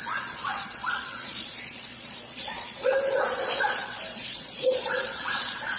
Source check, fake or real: fake